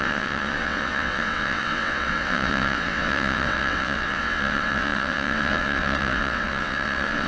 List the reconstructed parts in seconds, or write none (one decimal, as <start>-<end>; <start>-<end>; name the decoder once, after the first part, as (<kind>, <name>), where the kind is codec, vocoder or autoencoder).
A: 0.0-7.3 (vocoder, WaveNeXt)